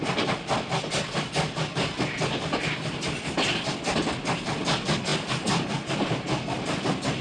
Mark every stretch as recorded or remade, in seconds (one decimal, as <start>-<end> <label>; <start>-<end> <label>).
0.0-7.2 recorded